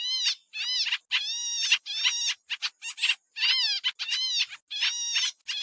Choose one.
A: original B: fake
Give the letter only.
A